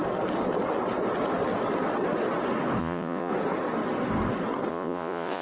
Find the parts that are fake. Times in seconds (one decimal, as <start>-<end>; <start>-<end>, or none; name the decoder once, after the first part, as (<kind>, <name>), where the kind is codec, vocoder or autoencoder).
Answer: 2.8-3.3 (vocoder, Vocos); 4.7-5.4